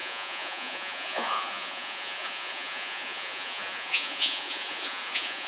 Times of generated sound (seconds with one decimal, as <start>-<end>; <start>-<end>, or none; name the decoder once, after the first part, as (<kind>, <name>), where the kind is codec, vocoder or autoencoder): 0.0-5.5 (vocoder, Vocos)